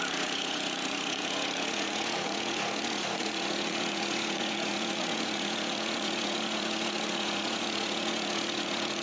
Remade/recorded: remade